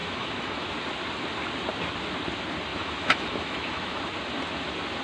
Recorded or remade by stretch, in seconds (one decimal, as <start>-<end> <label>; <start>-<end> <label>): 0.0-0.7 remade; 0.7-2.7 recorded; 2.7-4.0 remade; 4.0-5.0 recorded